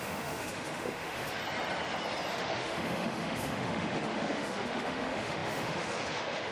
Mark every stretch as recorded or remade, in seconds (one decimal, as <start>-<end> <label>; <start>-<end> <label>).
0.0-1.4 remade; 1.4-2.3 recorded; 2.3-6.5 remade